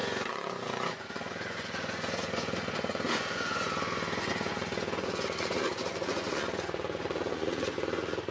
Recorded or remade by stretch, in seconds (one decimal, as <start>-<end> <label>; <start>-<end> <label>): 0.0-8.3 remade